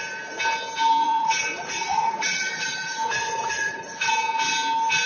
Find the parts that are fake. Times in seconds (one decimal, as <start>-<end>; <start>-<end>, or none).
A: 1.0-4.1